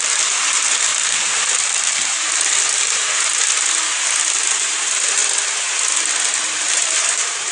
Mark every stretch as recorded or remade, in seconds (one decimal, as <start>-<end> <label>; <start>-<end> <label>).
0.0-3.0 remade; 3.0-4.5 recorded; 4.5-5.2 remade; 5.2-6.6 recorded; 6.6-7.5 remade

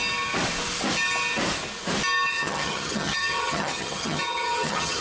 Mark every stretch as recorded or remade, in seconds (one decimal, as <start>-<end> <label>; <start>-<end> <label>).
0.0-2.3 recorded; 2.3-5.0 remade

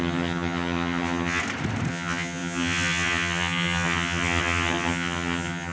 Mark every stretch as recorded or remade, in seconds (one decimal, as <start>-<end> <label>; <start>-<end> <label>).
0.0-1.4 remade; 1.4-1.9 recorded; 1.9-5.7 remade

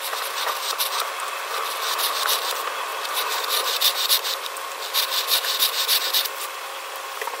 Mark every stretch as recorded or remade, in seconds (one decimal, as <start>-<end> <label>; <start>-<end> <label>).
0.0-2.9 recorded; 2.9-6.0 remade; 6.0-7.4 recorded

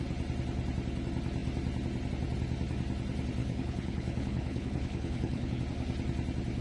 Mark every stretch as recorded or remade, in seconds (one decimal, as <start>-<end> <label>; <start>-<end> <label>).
0.0-3.4 recorded; 3.4-5.6 remade; 5.6-6.6 recorded

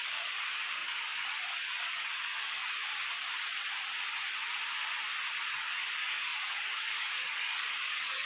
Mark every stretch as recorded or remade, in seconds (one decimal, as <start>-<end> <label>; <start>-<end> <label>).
0.0-2.6 remade; 2.6-5.5 recorded; 5.5-8.3 remade

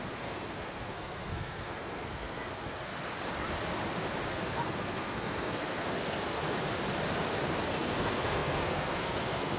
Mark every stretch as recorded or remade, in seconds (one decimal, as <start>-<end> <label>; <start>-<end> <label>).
0.0-2.9 remade; 2.9-4.3 recorded; 4.3-6.4 remade; 6.4-7.7 recorded; 7.7-9.6 remade